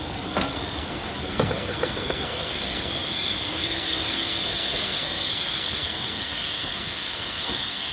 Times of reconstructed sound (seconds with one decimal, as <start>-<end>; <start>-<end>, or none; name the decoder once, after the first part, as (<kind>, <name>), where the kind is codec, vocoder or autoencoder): 0.0-7.9 (codec, SNAC)